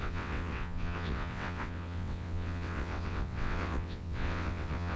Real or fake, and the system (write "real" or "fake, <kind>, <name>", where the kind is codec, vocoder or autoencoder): fake, vocoder, WaveNeXt